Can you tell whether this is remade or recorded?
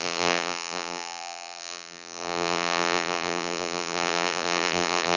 remade